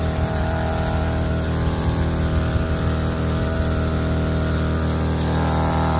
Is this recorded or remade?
recorded